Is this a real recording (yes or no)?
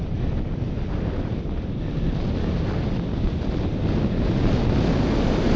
yes